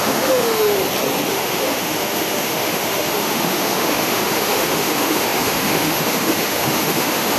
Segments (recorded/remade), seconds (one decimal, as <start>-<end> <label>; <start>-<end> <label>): 0.0-0.8 remade; 0.8-1.3 recorded; 1.3-7.4 remade